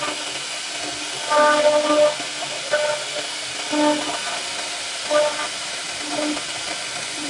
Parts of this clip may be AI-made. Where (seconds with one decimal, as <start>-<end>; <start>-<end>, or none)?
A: 6.5-7.3

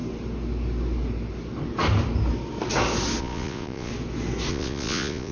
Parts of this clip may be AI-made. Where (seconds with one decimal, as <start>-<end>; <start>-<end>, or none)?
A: 3.2-3.9; 4.5-5.3

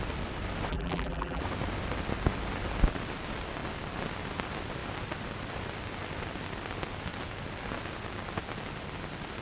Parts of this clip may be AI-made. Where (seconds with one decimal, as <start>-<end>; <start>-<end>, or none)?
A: 0.7-1.4

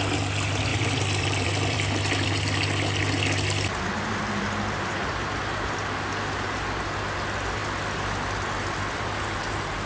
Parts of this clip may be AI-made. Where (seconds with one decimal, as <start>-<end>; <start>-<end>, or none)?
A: 0.7-2.3

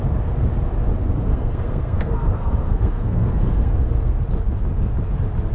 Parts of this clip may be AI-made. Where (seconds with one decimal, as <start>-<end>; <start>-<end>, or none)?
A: 1.3-4.2

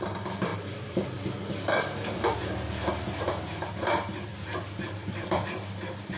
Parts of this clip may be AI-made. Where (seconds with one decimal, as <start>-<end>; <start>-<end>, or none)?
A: 0.5-3.6; 4.3-6.2